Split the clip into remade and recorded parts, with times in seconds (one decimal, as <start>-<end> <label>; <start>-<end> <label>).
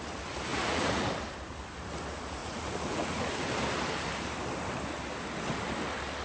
0.0-0.5 recorded; 0.5-1.1 remade; 1.1-2.4 recorded; 2.4-3.5 remade; 3.5-6.2 recorded